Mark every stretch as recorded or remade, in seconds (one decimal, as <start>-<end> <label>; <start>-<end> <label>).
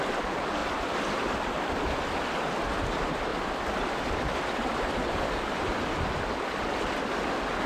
0.0-3.3 recorded; 3.3-6.4 remade; 6.4-7.7 recorded